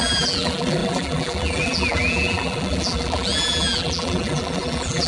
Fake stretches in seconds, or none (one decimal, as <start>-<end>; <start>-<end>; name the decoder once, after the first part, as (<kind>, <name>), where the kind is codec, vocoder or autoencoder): 0.0-5.1 (vocoder, BigVGAN v2)